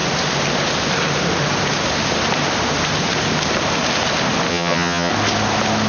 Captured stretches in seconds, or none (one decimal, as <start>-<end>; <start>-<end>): 0.0-4.5; 5.1-5.9